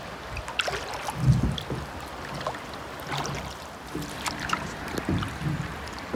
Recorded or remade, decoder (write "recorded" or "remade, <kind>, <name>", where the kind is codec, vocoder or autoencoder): recorded